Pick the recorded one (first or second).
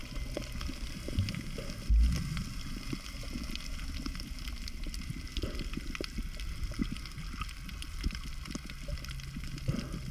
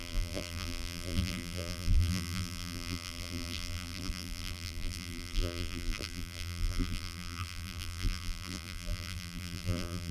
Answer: first